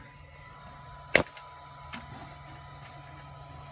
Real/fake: real